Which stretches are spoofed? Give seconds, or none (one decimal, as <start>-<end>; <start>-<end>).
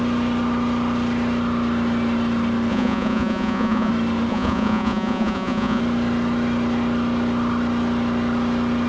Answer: 2.7-3.9; 4.3-5.8